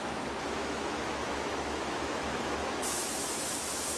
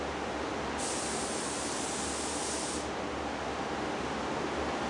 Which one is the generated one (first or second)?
first